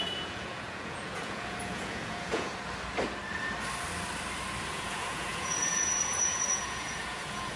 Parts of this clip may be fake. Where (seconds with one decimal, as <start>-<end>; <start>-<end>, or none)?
0.0-2.5; 4.7-7.6